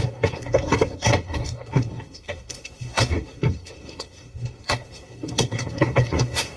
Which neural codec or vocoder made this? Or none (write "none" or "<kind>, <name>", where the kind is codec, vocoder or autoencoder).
codec, SNAC